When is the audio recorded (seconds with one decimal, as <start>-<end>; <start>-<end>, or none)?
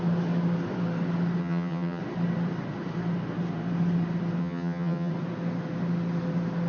0.0-1.4; 2.0-4.4; 5.1-6.7